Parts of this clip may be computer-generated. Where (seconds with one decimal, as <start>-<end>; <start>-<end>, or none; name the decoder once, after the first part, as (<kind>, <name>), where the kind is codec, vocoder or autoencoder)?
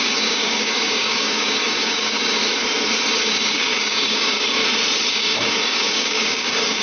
0.0-2.4 (codec, DAC); 3.3-4.6; 5.1-6.8